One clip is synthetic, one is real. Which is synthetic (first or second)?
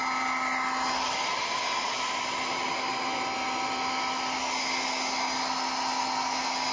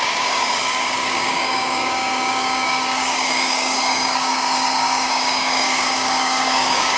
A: second